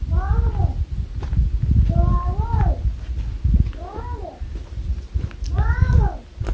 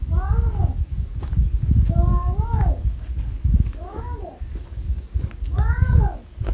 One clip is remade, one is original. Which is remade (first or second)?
second